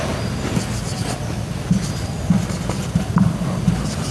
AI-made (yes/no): no